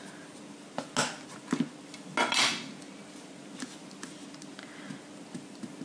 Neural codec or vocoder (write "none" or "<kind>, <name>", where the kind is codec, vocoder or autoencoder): none